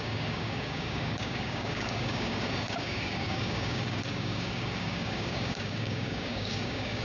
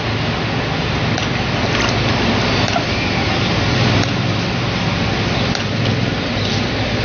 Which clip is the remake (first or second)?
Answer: first